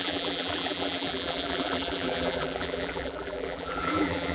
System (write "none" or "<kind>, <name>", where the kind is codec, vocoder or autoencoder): vocoder, BigVGAN v2